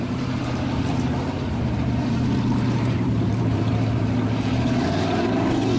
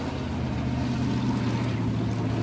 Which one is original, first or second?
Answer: second